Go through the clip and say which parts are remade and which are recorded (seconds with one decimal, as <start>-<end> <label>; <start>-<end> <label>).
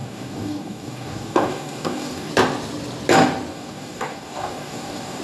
0.0-2.3 remade; 2.3-3.5 recorded; 3.5-5.2 remade